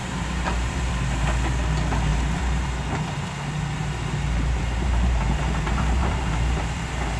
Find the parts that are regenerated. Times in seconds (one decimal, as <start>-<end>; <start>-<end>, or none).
0.0-0.9; 2.1-2.7; 3.8-7.2